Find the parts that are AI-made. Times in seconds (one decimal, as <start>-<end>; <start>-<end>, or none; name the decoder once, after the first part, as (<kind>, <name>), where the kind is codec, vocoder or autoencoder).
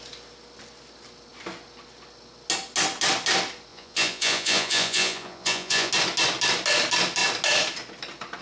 3.7-5.9 (vocoder, Vocos)